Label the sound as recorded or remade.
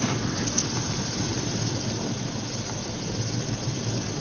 recorded